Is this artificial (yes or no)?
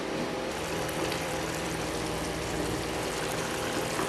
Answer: yes